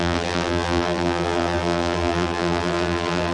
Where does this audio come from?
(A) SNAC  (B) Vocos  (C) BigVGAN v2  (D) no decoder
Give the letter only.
C